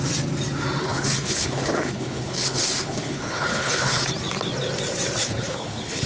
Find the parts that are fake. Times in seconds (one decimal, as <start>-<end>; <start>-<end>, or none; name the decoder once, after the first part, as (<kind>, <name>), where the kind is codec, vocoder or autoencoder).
0.8-4.1 (codec, HILCodec); 5.2-6.1